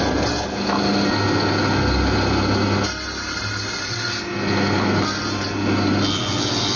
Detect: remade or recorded recorded